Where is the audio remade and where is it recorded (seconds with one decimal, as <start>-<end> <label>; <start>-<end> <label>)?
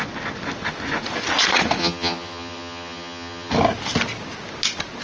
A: 0.0-1.8 recorded; 1.8-3.5 remade; 3.5-5.0 recorded